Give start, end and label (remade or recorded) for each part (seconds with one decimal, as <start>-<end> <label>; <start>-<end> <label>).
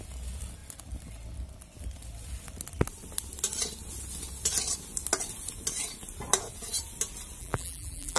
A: 0.0-7.4 recorded; 7.4-8.2 remade